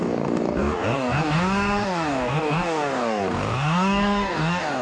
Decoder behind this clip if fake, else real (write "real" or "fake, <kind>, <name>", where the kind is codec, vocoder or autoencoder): fake, codec, DAC